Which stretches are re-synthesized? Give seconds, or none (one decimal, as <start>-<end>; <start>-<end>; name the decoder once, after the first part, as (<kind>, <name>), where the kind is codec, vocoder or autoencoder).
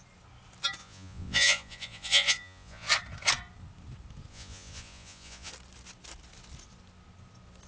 0.8-2.9 (vocoder, Vocos); 4.3-5.5